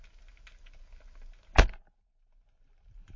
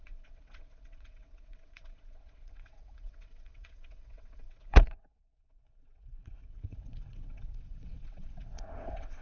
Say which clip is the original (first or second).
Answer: first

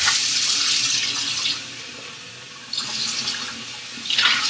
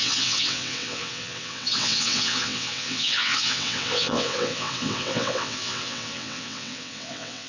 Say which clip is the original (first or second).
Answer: first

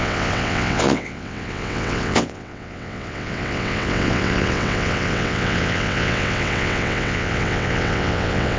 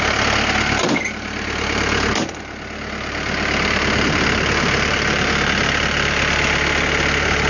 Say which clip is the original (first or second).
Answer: second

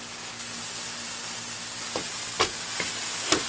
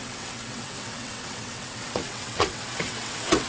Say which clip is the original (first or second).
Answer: first